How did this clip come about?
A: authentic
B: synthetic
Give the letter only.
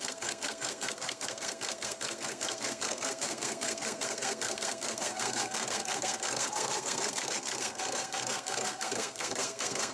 B